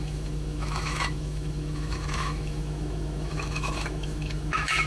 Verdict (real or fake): fake